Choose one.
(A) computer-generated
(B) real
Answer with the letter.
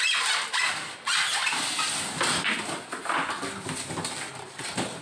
B